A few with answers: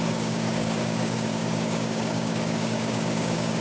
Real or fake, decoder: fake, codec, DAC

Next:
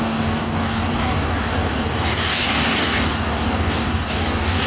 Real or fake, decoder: fake, codec, DAC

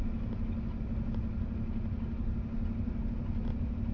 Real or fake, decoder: real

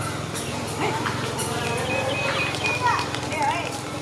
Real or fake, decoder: real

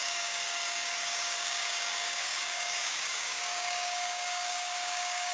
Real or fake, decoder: fake, codec, DAC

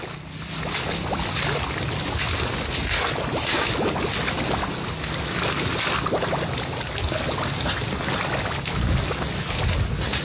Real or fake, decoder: real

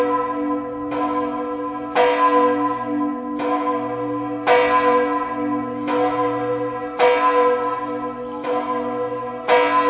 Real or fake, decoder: real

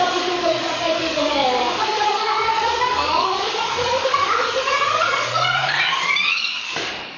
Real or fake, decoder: fake, codec, DAC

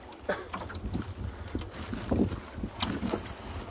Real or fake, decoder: real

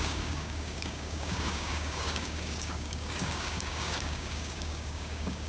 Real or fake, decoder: fake, codec, DAC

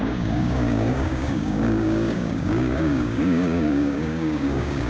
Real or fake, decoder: fake, codec, DAC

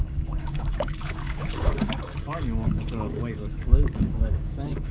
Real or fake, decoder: fake, codec, DAC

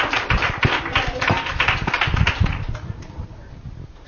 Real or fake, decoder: real